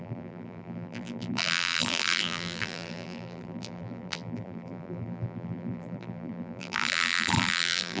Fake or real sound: fake